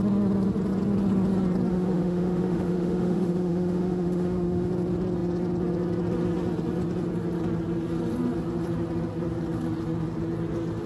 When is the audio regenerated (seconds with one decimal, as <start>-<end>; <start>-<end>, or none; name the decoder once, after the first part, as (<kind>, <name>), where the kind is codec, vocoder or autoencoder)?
1.7-4.7 (autoencoder, DAC-VAE)